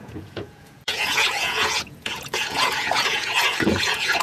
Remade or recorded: remade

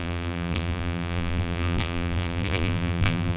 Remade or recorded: remade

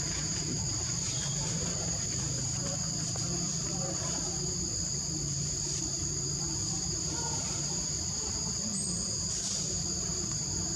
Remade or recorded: remade